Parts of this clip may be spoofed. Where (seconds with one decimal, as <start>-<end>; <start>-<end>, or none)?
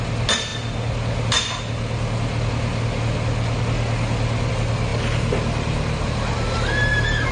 none